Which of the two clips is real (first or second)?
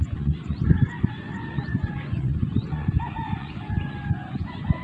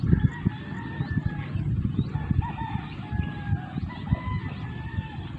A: second